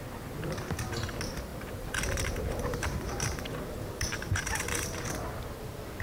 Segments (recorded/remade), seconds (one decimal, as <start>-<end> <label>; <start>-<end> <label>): 0.0-1.5 recorded; 1.5-5.1 remade; 5.1-6.0 recorded